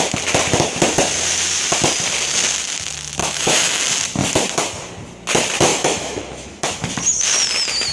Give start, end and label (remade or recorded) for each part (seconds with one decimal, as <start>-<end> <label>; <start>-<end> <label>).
0.0-3.2 recorded; 3.2-3.8 remade; 3.8-5.7 recorded; 5.7-6.8 remade; 6.8-7.9 recorded

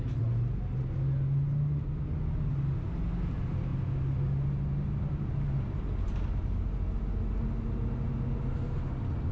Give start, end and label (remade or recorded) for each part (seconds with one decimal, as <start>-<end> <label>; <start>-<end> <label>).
0.0-9.3 recorded

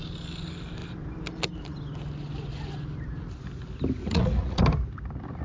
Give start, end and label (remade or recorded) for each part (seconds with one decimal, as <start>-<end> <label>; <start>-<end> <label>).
0.0-4.0 recorded; 4.0-4.6 remade; 4.6-5.4 recorded

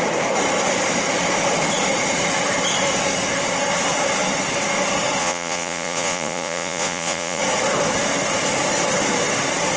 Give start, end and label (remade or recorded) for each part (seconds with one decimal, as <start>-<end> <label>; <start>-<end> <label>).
0.0-5.2 recorded; 5.2-7.4 remade; 7.4-9.8 recorded

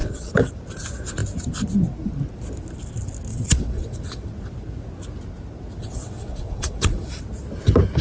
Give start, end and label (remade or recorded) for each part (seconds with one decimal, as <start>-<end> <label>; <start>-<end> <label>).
0.0-0.5 remade; 0.5-3.3 recorded; 3.3-4.3 remade; 4.3-5.8 recorded; 5.8-7.2 remade; 7.2-8.0 recorded

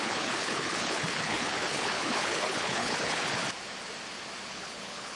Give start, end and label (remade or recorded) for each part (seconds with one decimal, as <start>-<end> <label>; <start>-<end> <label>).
0.0-3.4 remade; 3.4-4.5 recorded; 4.5-5.2 remade

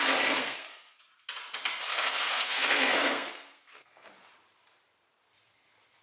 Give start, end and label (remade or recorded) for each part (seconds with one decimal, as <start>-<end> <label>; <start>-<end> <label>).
0.0-0.4 recorded; 0.4-1.0 remade; 1.0-1.9 recorded; 1.9-4.1 remade; 4.1-6.0 recorded

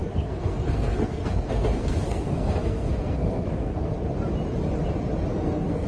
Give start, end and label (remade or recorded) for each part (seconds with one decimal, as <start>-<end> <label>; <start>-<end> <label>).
0.0-3.9 remade; 3.9-5.3 recorded; 5.3-5.9 remade